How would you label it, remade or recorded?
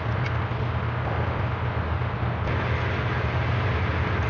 recorded